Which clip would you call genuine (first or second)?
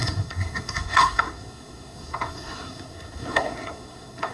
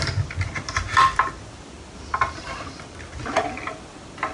second